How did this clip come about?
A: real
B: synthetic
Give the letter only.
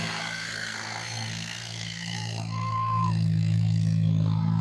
B